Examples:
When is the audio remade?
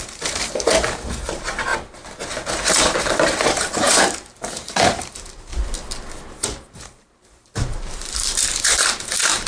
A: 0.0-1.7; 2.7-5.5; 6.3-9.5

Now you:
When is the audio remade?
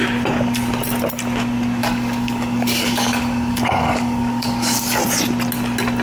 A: 1.8-5.0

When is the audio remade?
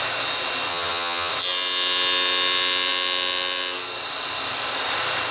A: 0.7-1.3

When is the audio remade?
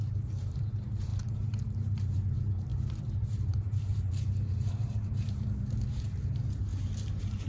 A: 0.0-7.5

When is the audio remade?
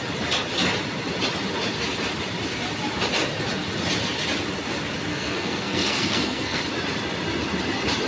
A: 5.1-6.6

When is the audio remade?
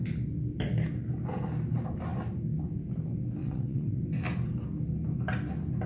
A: 3.4-4.0